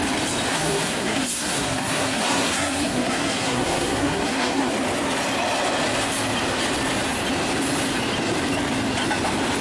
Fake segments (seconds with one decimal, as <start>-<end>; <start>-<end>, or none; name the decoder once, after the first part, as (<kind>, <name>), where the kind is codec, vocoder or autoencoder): 0.5-4.7 (codec, SNAC)